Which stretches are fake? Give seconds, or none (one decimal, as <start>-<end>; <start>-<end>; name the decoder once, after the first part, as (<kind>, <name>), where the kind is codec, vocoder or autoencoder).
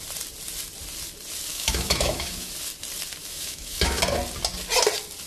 1.5-2.5 (autoencoder, DAC-VAE); 3.2-4.0